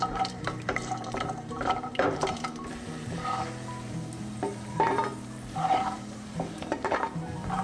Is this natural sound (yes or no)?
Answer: no